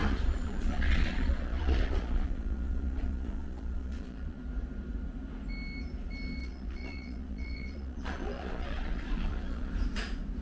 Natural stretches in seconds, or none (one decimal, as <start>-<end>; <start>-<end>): 4.4-6.4; 9.7-10.4